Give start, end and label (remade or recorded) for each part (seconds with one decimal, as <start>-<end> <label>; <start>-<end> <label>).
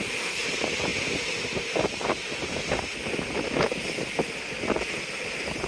0.0-5.7 recorded